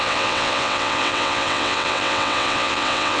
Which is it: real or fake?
fake